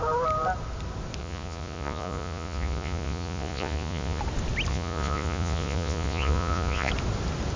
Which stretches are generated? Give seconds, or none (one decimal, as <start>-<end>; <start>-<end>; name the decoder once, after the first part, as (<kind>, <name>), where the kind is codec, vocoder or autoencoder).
1.2-4.2 (vocoder, Vocos); 4.7-6.9